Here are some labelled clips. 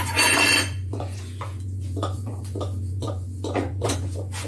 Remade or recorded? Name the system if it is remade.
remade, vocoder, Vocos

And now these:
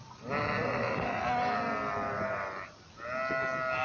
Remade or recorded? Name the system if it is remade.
recorded